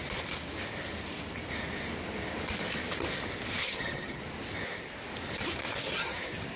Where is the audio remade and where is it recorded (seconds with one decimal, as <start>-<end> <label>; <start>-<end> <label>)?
0.0-3.6 recorded; 3.6-4.2 remade; 4.2-6.6 recorded